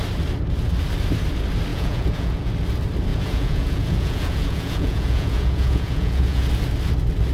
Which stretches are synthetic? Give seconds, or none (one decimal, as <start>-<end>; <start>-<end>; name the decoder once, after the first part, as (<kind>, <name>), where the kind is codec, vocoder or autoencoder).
1.7-2.5 (vocoder, Vocos); 3.1-6.5